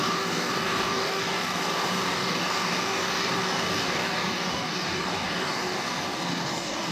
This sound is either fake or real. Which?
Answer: fake